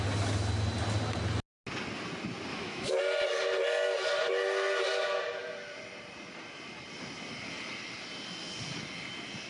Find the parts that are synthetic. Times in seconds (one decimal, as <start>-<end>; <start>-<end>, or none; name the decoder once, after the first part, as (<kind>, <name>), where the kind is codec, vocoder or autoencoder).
2.5-3.0 (autoencoder, DAC-VAE)